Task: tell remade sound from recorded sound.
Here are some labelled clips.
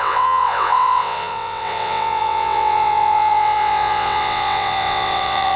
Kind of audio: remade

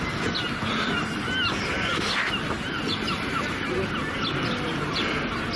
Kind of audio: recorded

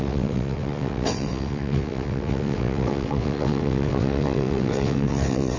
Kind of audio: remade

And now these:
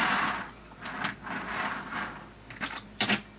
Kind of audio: recorded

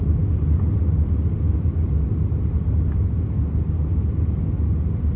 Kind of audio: recorded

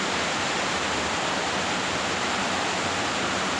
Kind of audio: recorded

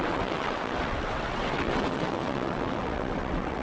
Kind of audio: remade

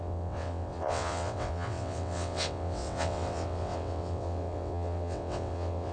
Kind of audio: remade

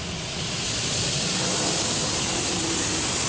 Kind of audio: recorded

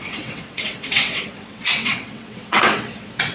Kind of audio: remade